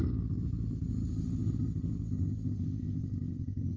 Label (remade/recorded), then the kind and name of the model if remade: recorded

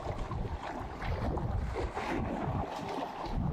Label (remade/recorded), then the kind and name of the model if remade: recorded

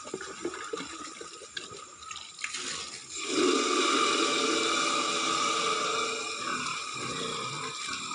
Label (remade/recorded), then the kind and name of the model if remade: recorded